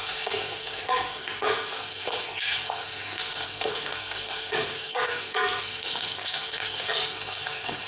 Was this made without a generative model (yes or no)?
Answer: no